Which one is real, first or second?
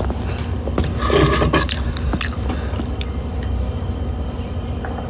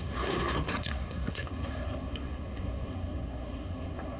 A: first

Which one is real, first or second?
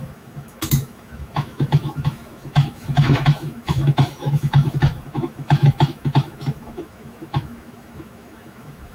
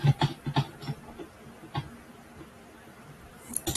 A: second